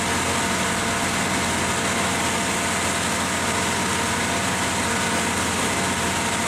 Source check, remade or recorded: recorded